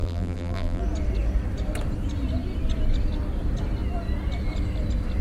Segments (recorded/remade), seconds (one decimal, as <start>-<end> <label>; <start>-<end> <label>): 0.0-0.8 remade; 0.8-5.2 recorded